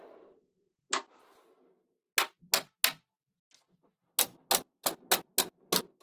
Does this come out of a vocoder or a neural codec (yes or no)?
no